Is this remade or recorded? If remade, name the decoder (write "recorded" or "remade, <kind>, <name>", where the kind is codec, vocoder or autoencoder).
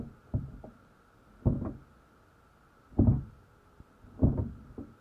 recorded